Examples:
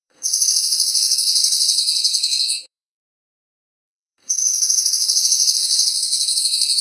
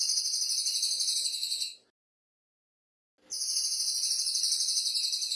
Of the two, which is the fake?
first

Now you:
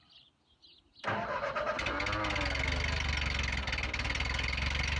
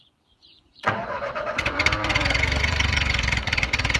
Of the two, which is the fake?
second